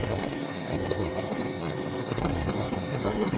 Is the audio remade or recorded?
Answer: remade